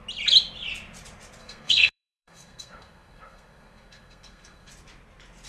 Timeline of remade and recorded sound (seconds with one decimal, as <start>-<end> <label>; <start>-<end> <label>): 0.0-1.4 recorded; 1.4-4.7 remade; 4.7-5.5 recorded